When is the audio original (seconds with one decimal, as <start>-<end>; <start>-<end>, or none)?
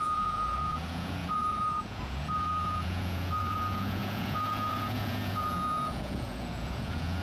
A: none